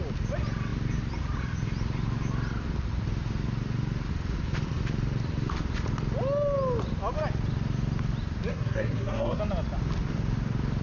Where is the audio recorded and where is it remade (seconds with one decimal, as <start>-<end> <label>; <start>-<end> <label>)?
0.0-8.5 recorded; 8.5-9.4 remade; 9.4-10.8 recorded